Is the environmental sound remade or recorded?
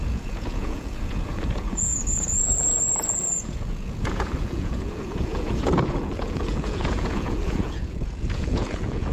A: remade